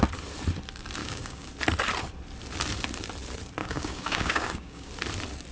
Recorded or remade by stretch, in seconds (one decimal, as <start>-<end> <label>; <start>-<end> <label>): 0.0-1.0 recorded; 1.0-1.5 remade; 1.5-3.6 recorded; 3.6-4.9 remade; 4.9-5.5 recorded